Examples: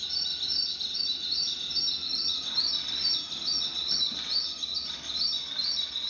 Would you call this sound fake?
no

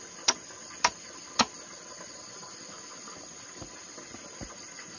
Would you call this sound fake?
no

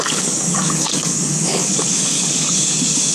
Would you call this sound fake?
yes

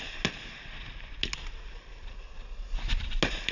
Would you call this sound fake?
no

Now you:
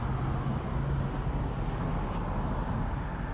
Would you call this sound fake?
no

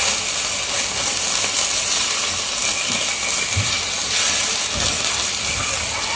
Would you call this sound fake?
no